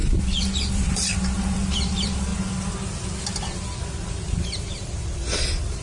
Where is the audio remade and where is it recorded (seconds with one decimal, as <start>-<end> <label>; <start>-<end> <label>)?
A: 0.0-0.7 recorded; 0.7-2.3 remade; 2.3-4.4 recorded; 4.4-5.8 remade